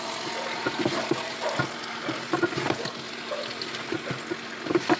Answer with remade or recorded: recorded